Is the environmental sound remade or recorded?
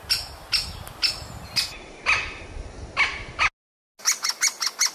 recorded